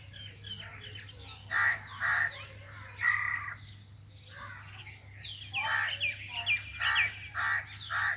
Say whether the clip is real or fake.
real